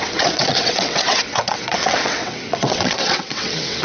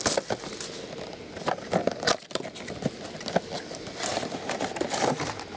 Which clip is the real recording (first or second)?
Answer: second